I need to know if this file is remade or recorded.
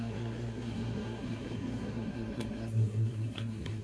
remade